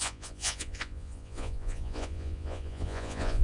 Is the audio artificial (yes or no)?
yes